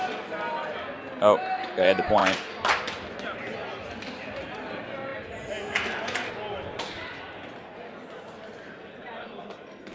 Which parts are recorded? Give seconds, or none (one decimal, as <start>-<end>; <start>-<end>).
0.0-9.9